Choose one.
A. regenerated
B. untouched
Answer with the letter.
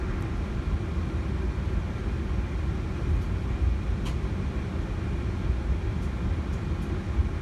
B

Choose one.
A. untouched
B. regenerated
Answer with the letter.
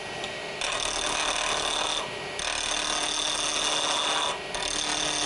A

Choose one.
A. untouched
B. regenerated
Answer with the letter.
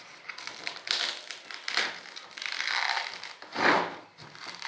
A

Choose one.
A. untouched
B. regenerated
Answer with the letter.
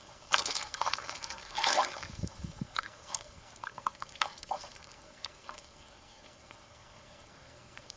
B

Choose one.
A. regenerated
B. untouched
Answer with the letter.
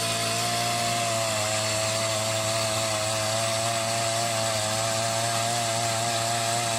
B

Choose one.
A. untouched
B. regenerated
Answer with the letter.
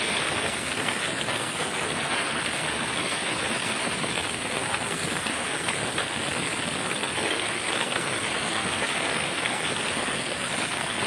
B